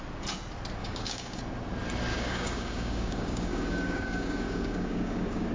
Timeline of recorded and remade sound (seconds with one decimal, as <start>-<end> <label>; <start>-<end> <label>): 0.0-0.8 recorded; 0.8-1.4 remade; 1.4-2.1 recorded; 2.1-5.5 remade